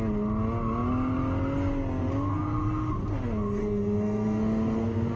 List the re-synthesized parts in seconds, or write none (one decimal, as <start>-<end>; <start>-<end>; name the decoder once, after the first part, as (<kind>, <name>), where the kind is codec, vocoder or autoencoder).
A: 2.3-2.9 (codec, SNAC); 3.6-5.2